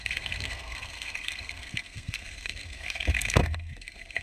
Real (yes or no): no